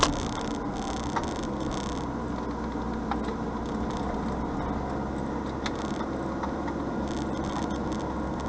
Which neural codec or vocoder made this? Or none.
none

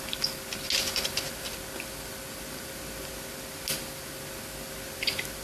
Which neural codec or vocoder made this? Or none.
none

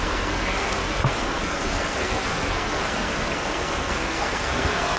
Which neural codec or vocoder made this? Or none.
codec, SNAC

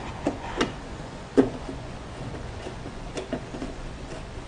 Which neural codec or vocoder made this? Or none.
vocoder, Vocos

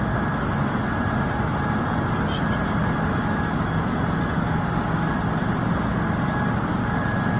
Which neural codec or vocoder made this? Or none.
none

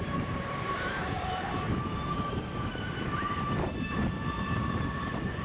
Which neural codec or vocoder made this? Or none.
vocoder, BigVGAN v2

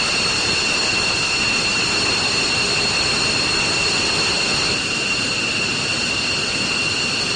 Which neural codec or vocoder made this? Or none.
none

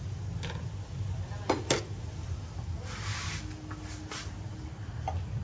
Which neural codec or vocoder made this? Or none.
none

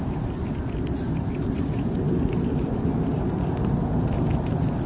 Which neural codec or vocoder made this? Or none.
none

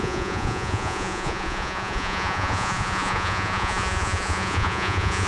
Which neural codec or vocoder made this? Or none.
vocoder, Vocos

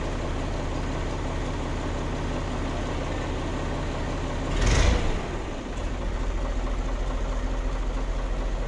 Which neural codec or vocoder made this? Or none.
none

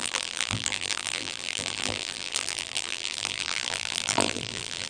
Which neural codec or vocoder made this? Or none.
vocoder, BigVGAN v2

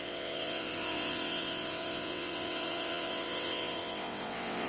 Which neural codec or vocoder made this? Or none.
vocoder, WaveNeXt